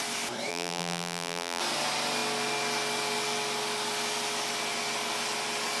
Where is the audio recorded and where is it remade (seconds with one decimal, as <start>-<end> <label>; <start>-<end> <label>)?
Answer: 0.0-0.5 recorded; 0.5-1.6 remade; 1.6-5.8 recorded